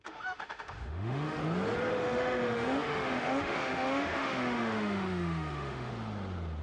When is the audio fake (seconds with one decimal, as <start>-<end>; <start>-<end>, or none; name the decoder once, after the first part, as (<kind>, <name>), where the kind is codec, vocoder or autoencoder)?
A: 0.0-1.4 (autoencoder, DAC-VAE); 1.9-5.9